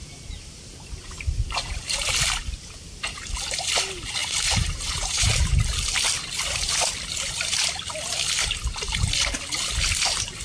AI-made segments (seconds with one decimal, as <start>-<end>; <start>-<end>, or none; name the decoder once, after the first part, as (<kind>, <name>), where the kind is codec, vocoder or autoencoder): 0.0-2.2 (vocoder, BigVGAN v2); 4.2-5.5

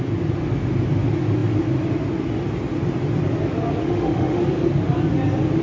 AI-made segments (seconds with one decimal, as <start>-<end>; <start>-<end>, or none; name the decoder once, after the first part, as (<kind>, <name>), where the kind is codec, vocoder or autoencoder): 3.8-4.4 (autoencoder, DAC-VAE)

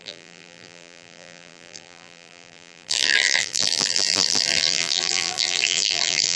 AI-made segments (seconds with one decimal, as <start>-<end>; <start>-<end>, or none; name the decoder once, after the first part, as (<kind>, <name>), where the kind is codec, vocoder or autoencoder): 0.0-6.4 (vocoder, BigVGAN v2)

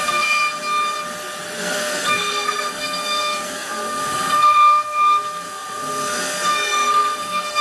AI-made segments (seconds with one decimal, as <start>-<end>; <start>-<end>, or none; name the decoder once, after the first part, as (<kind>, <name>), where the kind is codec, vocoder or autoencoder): 0.0-0.4 (codec, SNAC); 1.6-7.6

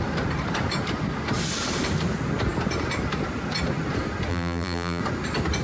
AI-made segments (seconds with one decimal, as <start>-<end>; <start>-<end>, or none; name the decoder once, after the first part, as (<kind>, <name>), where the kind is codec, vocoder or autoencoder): 4.3-5.0 (vocoder, BigVGAN v2)

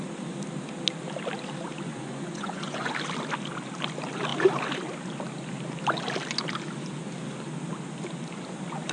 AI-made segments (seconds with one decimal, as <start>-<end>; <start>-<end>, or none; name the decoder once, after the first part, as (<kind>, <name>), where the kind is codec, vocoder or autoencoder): 1.9-2.9 (vocoder, Vocos)